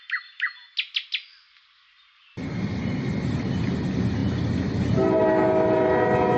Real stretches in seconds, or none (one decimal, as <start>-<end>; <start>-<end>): 0.0-6.4